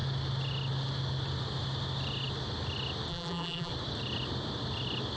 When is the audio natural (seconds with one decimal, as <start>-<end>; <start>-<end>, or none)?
0.0-3.1; 3.7-5.2